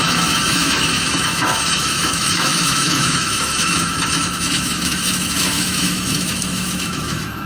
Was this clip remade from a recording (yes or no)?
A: yes